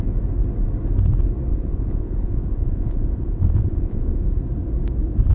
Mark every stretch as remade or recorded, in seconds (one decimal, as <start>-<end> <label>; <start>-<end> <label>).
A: 0.0-1.5 recorded; 1.5-4.4 remade; 4.4-5.3 recorded